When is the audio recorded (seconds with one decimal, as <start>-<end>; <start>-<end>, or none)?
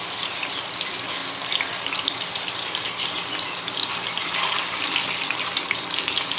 0.0-6.4